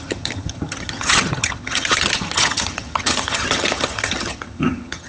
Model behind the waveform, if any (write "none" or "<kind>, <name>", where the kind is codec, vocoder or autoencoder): vocoder, HiFi-GAN